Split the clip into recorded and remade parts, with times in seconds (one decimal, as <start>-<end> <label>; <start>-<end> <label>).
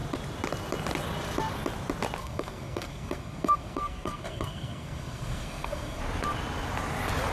0.0-2.2 recorded; 2.2-6.0 remade; 6.0-7.3 recorded